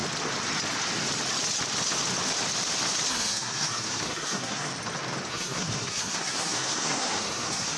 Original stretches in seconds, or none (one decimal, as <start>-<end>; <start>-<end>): 0.0-3.1; 4.7-5.3